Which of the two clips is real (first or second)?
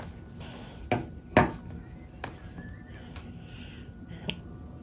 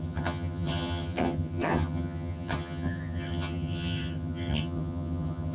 first